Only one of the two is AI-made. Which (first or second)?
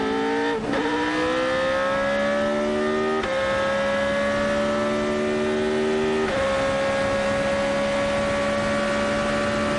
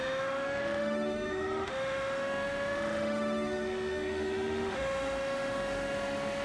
second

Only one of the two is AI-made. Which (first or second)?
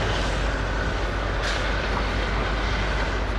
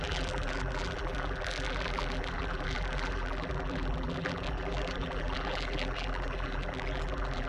second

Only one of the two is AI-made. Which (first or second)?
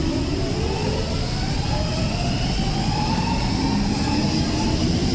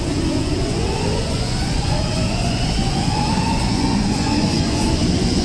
second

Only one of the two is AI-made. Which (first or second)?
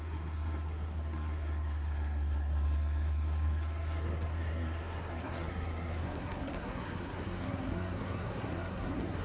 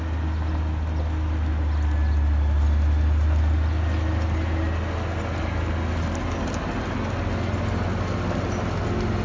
first